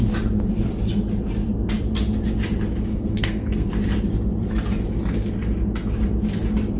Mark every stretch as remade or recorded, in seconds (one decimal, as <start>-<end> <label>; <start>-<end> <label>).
0.0-2.9 recorded; 2.9-3.7 remade; 3.7-6.8 recorded